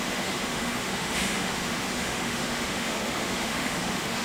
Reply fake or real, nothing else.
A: fake